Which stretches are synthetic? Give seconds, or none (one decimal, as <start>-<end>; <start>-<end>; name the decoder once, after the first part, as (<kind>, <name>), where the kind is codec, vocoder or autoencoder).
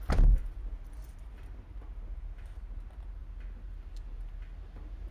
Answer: none